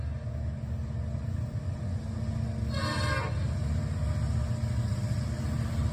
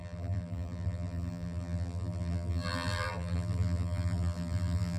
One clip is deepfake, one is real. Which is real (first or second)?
first